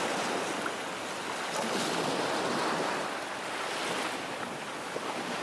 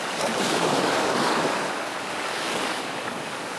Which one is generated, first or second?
second